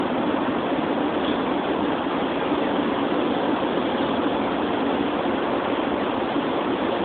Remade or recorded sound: recorded